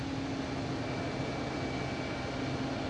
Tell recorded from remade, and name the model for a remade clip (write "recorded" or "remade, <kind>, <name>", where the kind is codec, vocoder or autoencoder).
recorded